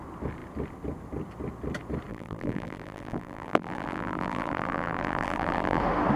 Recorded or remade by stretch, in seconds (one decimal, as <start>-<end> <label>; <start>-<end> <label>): 0.0-2.1 recorded; 2.1-5.8 remade; 5.8-6.2 recorded